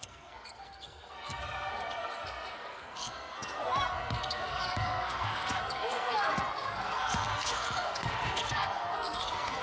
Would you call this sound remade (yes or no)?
yes